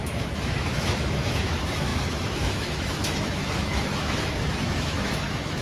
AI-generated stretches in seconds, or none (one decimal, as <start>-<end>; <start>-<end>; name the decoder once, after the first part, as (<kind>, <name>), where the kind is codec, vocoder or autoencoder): 0.0-5.6 (autoencoder, DAC-VAE)